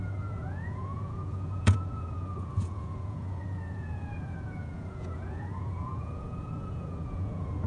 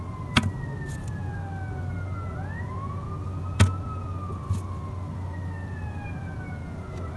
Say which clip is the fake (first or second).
first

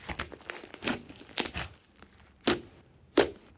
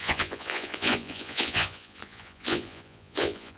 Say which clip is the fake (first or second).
second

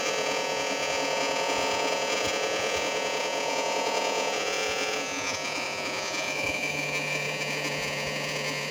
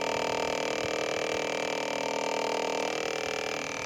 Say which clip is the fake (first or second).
first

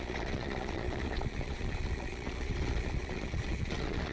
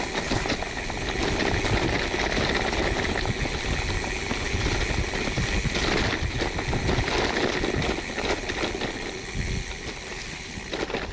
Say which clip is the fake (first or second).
first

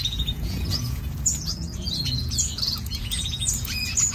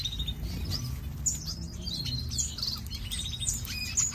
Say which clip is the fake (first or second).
first